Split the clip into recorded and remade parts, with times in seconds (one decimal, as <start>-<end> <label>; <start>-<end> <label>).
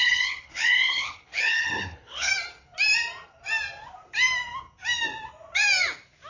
0.0-2.3 remade; 2.3-6.3 recorded